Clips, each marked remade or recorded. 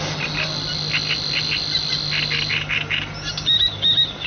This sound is recorded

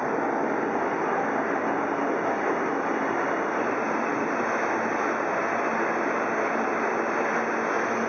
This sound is recorded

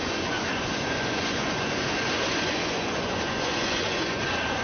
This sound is remade